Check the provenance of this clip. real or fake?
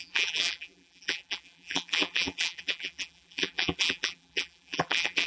fake